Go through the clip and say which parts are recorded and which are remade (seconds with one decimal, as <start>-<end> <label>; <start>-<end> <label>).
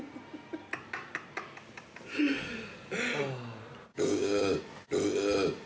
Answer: 0.0-3.9 recorded; 3.9-4.6 remade; 4.6-5.7 recorded